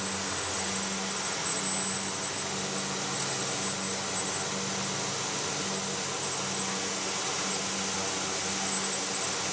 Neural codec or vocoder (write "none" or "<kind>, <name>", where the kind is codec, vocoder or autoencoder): none